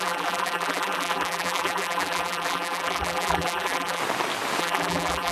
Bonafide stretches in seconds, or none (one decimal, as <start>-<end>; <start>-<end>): 4.0-4.6